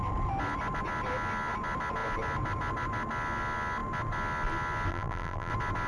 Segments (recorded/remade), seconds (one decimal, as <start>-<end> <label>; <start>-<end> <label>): 0.0-4.9 recorded; 4.9-5.5 remade; 5.5-5.9 recorded